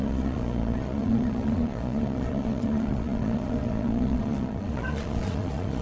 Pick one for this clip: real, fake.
fake